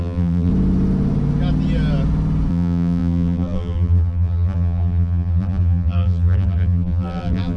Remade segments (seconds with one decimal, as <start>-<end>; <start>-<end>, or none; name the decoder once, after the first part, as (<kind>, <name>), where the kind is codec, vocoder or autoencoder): 0.0-0.5 (vocoder, BigVGAN v2); 2.5-7.6